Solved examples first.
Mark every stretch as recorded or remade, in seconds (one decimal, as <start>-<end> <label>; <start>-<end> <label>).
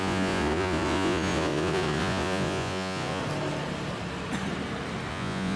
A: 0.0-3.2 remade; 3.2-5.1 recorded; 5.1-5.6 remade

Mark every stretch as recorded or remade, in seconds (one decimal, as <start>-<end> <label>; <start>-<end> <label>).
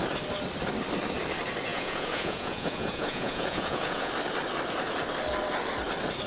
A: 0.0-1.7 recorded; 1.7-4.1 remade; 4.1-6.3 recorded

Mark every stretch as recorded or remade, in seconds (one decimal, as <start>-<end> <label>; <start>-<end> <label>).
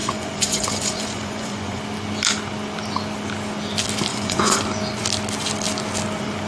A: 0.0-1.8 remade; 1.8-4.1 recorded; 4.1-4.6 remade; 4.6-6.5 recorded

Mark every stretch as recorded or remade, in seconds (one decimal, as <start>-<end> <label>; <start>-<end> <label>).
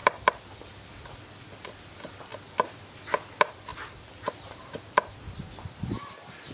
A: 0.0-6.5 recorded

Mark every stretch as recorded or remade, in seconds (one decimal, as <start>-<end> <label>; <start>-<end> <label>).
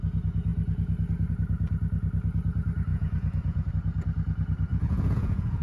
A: 0.0-2.9 recorded; 2.9-3.7 remade; 3.7-4.7 recorded; 4.7-5.6 remade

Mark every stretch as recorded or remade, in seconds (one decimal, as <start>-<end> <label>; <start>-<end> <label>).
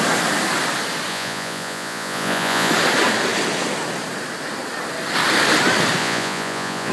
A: 0.0-1.1 recorded; 1.1-2.7 remade; 2.7-6.0 recorded; 6.0-6.9 remade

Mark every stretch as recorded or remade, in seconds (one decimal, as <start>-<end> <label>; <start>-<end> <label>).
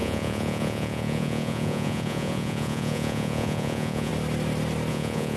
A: 0.0-4.1 remade; 4.1-4.9 recorded; 4.9-5.4 remade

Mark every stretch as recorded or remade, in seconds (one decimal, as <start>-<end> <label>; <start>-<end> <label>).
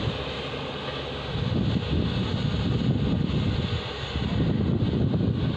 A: 0.0-5.6 recorded